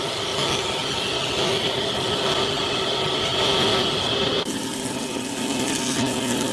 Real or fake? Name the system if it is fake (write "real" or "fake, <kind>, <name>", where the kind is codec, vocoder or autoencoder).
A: real